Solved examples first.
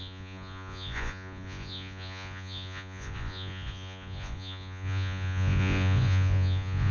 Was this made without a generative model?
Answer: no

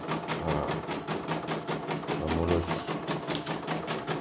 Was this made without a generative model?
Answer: yes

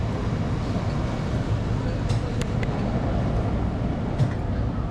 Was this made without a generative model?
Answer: yes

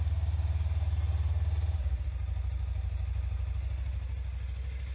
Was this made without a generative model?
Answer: yes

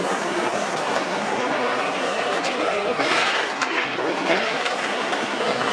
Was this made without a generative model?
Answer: no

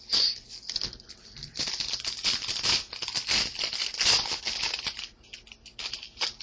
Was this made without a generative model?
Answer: yes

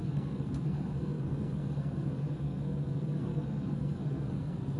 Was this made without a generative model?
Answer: no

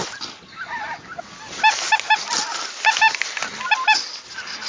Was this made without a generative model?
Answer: yes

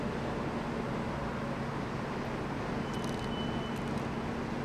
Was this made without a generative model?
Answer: yes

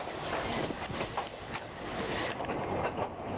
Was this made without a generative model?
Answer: yes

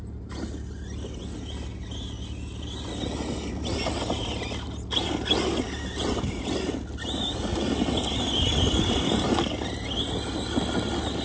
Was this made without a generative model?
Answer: yes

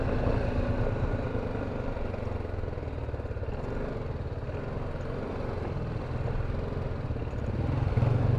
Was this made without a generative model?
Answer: yes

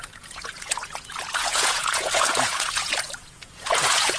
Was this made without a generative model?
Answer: no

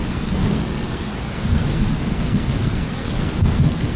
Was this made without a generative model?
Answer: no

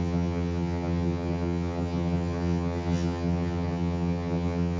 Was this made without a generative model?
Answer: no